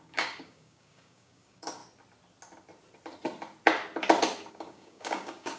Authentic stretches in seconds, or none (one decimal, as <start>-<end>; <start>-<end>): 1.8-4.5